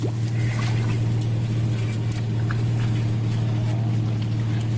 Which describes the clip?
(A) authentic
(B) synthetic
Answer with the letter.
A